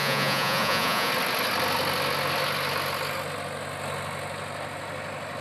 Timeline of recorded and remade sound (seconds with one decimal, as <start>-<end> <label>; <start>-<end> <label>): 0.0-1.1 remade; 1.1-5.4 recorded